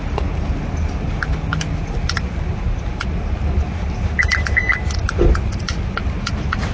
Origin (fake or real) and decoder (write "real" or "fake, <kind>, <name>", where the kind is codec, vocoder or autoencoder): real